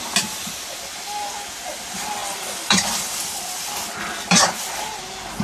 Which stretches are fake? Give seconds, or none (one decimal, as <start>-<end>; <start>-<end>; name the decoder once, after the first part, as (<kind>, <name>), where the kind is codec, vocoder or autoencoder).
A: 2.2-5.0 (vocoder, BigVGAN v2)